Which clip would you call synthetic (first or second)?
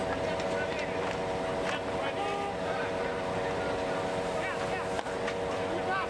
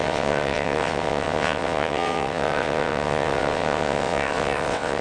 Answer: second